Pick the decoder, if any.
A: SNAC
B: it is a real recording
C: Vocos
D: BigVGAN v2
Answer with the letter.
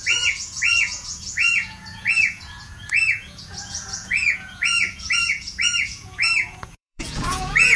C